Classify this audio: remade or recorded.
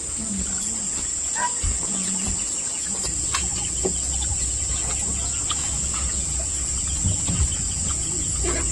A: remade